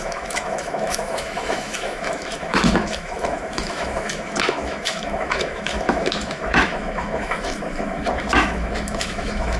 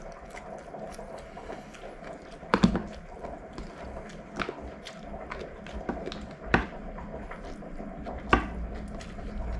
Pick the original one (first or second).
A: second